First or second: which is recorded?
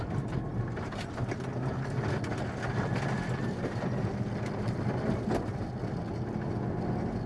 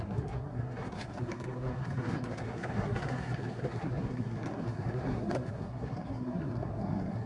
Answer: first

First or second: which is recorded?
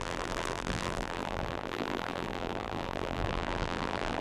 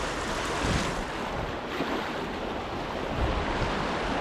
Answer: second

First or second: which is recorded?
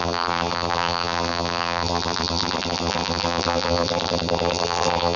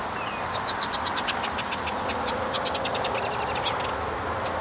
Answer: second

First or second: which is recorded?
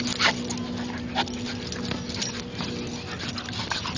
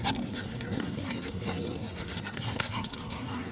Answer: first